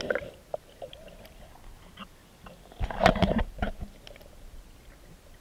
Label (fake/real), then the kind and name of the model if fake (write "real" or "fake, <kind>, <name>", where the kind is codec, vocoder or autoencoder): real